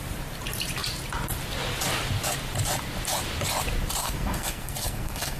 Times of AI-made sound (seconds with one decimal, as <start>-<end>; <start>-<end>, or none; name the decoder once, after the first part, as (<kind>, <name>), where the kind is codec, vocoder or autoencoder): 4.0-5.4 (codec, SNAC)